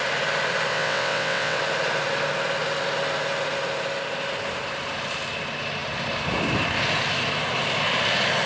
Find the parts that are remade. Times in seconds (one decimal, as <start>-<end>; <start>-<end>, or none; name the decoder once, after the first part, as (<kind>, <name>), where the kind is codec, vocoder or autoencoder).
0.7-1.6 (vocoder, WaveNeXt)